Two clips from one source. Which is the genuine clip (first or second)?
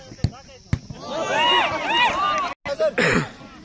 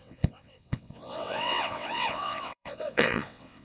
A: first